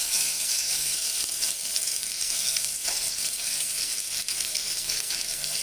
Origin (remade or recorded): remade